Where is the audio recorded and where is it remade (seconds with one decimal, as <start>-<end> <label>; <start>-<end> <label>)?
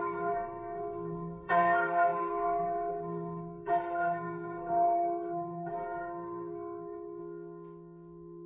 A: 0.0-7.2 remade; 7.2-8.5 recorded